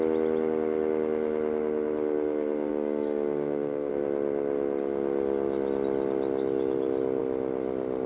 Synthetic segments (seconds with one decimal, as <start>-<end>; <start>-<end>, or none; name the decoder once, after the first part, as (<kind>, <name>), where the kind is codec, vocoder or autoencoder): 2.7-3.9 (codec, DAC)